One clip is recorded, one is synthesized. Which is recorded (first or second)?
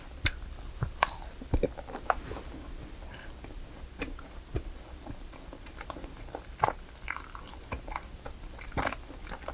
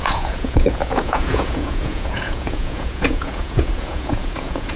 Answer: first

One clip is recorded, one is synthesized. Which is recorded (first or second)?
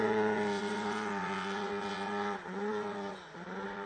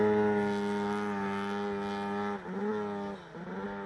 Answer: second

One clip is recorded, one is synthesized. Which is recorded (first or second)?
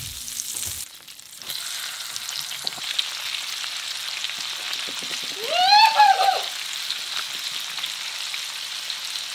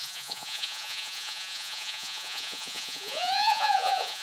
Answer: first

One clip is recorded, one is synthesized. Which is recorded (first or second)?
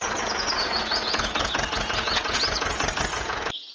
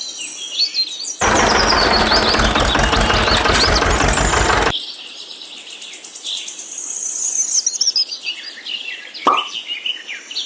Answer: second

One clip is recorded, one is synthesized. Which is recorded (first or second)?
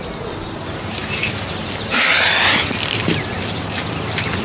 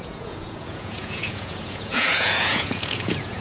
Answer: first